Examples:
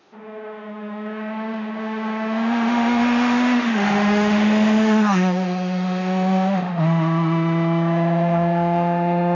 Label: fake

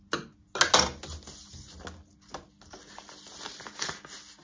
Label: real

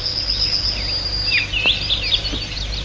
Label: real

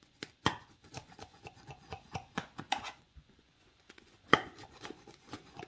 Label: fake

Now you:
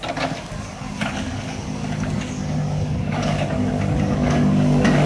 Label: fake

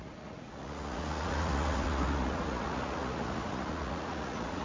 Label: fake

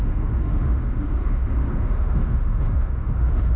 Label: fake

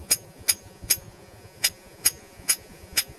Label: fake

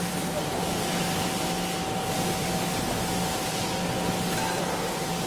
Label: real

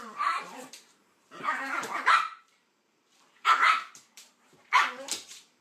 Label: fake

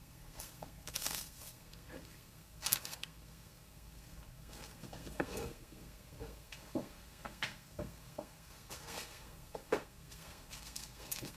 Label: fake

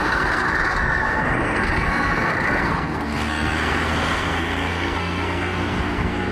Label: fake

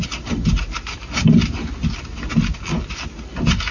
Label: real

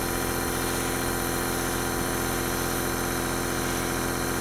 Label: real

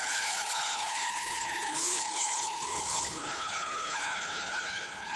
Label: fake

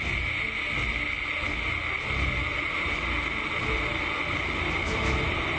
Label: real